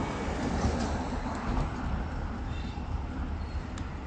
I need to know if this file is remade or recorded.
recorded